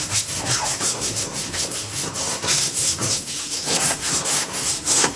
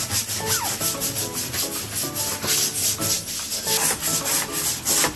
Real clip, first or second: second